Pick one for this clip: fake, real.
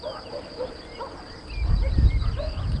real